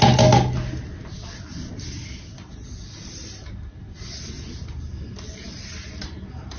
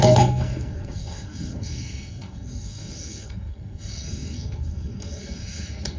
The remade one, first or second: second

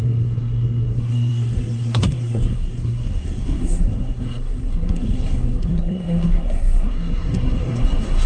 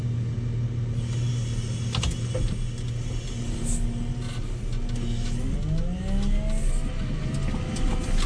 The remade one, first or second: first